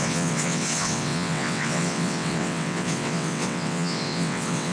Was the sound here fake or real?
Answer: fake